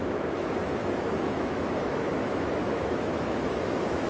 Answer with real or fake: fake